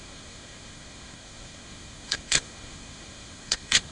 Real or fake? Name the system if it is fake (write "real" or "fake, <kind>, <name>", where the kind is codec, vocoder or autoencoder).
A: fake, codec, SNAC